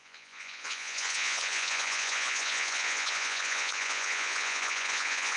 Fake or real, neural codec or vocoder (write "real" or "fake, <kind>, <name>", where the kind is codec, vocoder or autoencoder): fake, vocoder, Vocos